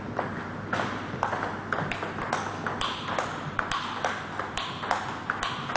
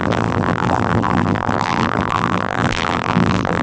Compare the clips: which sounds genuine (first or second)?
first